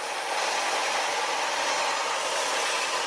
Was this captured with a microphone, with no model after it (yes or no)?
yes